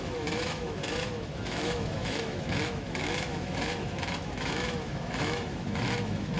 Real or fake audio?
fake